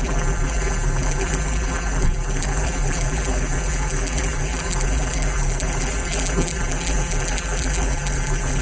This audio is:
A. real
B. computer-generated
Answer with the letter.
B